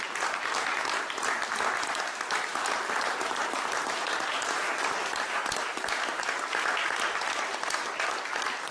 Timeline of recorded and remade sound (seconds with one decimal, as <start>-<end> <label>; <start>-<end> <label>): 0.0-4.3 recorded; 4.3-6.2 remade; 6.2-8.7 recorded